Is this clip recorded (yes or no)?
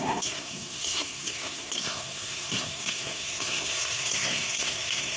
no